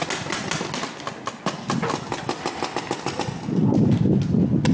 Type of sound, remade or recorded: recorded